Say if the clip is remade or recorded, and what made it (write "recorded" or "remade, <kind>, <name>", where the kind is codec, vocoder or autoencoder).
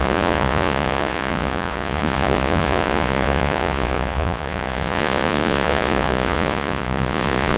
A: remade, vocoder, Vocos